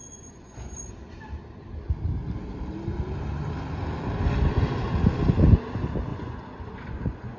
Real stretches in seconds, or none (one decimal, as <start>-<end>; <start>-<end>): 0.9-6.1